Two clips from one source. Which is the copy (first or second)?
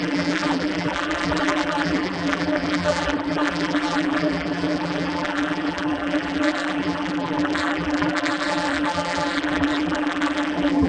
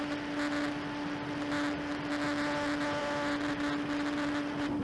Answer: first